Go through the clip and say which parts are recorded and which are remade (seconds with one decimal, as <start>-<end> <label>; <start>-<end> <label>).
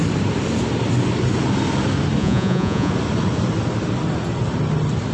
0.0-2.2 recorded; 2.2-2.9 remade; 2.9-5.1 recorded